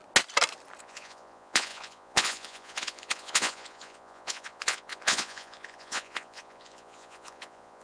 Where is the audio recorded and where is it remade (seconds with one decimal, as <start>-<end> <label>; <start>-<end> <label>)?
0.0-0.8 recorded; 0.8-7.8 remade